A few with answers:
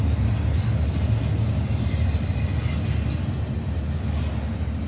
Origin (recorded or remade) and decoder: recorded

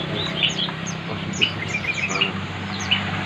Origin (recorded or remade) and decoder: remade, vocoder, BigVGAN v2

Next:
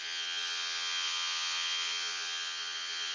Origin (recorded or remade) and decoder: remade, vocoder, Vocos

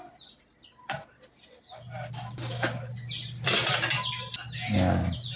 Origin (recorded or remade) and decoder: recorded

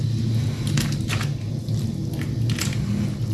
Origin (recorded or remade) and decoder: recorded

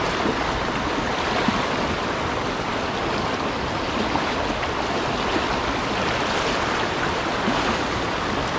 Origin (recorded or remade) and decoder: recorded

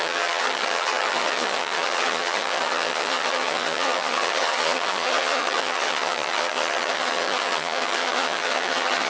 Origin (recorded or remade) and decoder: remade, vocoder, HiFi-GAN